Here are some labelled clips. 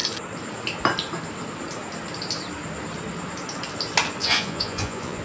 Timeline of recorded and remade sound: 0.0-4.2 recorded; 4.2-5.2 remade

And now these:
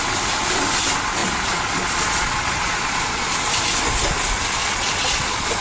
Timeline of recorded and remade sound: 0.0-1.2 recorded; 1.2-3.5 remade; 3.5-4.6 recorded; 4.6-5.6 remade

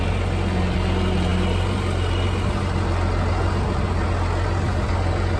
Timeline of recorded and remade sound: 0.0-5.4 recorded

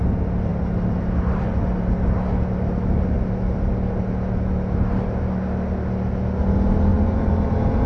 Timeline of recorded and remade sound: 0.0-6.9 recorded; 6.9-7.5 remade; 7.5-7.9 recorded

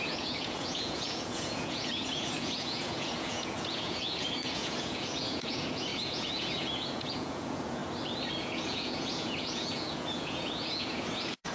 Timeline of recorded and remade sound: 0.0-7.8 remade; 7.8-8.4 recorded; 8.4-11.5 remade